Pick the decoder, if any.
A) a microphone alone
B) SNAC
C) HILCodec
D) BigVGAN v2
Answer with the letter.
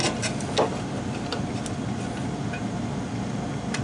A